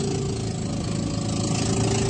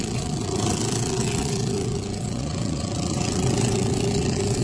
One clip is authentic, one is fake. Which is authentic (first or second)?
first